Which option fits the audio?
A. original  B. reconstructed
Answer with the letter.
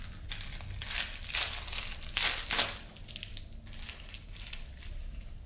A